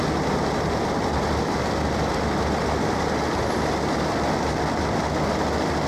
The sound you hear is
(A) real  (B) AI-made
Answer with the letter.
A